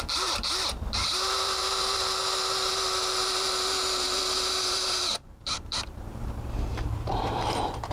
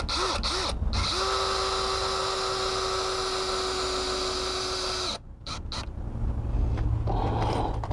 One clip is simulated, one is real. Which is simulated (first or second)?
first